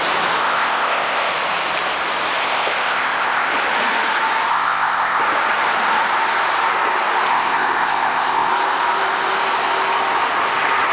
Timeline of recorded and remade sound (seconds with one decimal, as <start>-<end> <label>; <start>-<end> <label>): 0.0-0.4 recorded; 0.4-1.3 remade; 1.3-2.4 recorded; 2.4-3.5 remade; 3.5-4.5 recorded; 4.5-5.2 remade; 5.2-7.3 recorded; 7.3-8.5 remade; 8.5-10.9 recorded